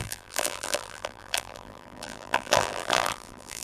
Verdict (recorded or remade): remade